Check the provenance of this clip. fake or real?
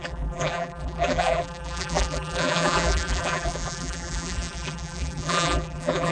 fake